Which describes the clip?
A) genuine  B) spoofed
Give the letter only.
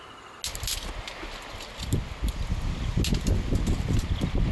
A